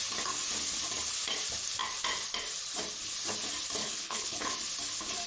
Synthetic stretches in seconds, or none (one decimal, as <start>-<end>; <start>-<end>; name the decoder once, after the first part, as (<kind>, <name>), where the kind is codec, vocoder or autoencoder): 3.8-4.5 (codec, HILCodec)